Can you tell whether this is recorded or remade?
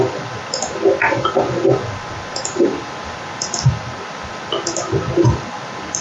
recorded